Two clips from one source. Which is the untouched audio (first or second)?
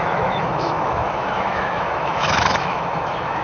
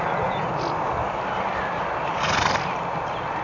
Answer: second